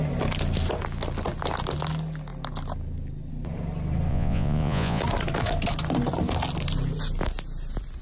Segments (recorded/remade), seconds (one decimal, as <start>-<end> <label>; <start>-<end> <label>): 0.0-4.1 recorded; 4.1-5.0 remade; 5.0-8.0 recorded